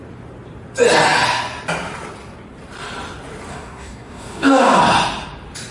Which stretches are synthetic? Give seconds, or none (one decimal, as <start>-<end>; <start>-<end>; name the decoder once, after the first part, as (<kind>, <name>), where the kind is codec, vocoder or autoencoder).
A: 3.5-4.8 (codec, DAC)